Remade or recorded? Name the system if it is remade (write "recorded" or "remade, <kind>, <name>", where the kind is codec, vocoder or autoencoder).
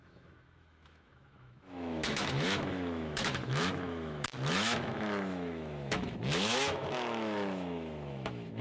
remade, autoencoder, DAC-VAE